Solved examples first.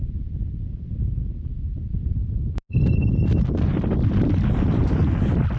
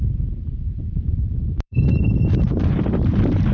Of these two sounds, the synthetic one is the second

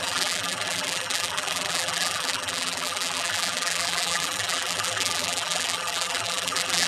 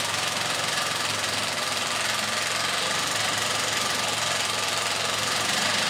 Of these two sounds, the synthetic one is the first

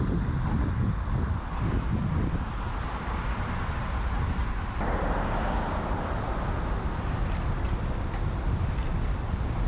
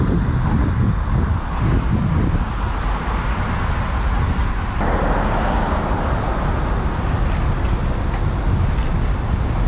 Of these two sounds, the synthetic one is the first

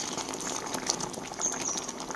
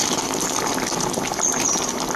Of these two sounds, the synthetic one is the second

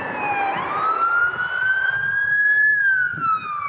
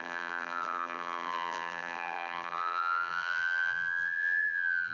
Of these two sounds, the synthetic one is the second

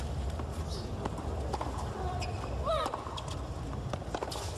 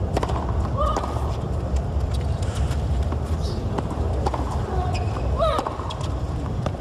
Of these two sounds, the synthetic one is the second